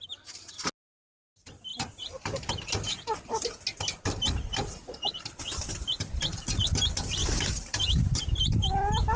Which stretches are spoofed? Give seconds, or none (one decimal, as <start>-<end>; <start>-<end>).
1.7-2.5; 7.2-8.2